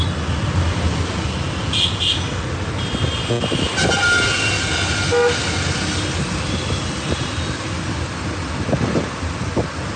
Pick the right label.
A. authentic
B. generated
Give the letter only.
A